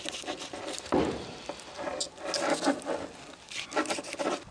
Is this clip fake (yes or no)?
no